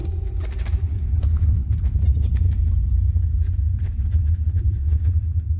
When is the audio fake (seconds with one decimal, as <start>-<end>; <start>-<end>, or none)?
1.6-5.0